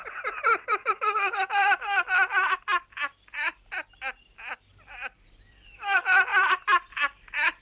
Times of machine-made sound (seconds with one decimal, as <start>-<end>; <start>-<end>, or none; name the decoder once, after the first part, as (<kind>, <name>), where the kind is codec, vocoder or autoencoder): 0.0-7.6 (vocoder, BigVGAN v2)